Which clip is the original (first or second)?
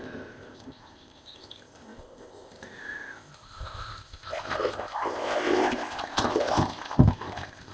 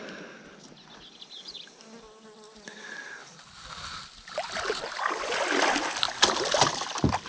second